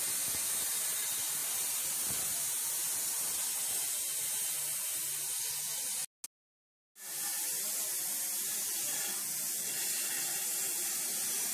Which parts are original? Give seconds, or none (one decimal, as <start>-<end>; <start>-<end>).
0.0-11.5